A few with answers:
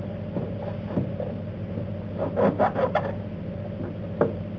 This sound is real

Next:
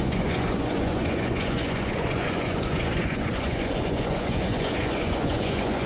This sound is fake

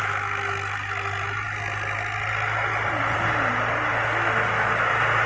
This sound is real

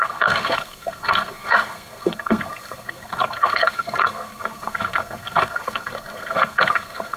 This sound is fake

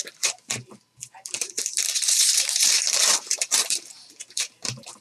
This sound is fake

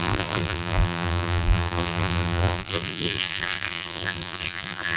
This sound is fake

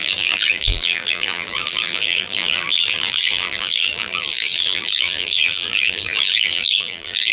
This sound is fake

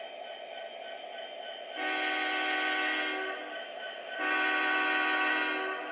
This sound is real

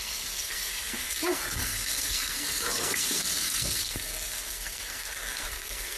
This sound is fake